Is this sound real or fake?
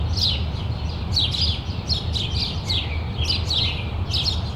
real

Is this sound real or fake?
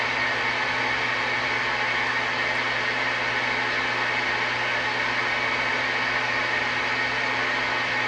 real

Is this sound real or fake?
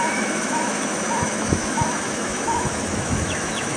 fake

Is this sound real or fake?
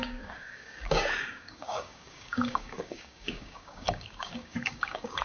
fake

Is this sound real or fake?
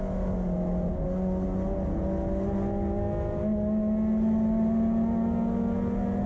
real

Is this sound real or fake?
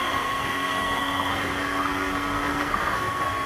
fake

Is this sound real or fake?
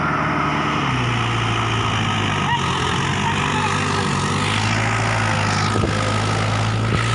real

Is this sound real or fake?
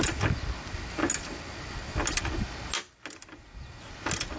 real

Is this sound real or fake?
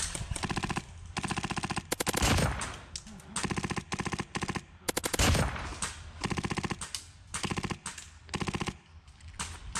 real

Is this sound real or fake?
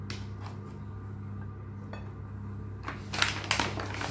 real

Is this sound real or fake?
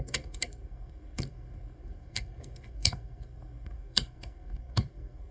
fake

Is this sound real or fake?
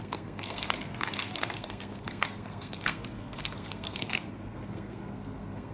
fake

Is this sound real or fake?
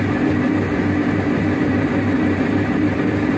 fake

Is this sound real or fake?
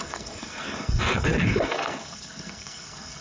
fake